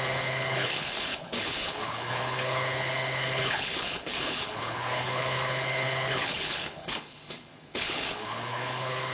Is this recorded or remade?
remade